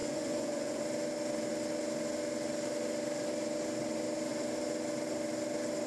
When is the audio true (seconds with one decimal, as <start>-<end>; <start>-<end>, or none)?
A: 0.8-5.9